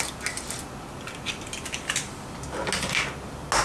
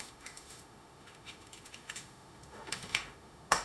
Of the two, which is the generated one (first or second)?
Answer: second